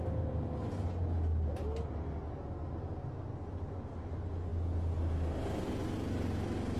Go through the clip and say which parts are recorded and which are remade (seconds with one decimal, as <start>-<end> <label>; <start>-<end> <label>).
0.0-6.8 recorded